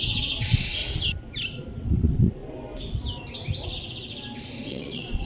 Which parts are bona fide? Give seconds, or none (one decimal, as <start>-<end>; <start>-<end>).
0.7-1.8; 2.4-4.7